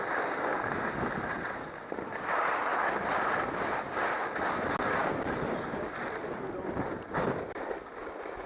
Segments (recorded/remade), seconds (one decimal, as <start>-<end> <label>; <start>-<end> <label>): 0.0-2.7 recorded; 2.7-3.5 remade; 3.5-8.5 recorded